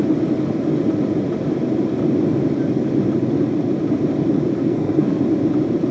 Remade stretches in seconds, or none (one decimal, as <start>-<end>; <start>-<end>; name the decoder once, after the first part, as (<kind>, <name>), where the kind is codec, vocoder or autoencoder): 4.6-5.2 (codec, SNAC)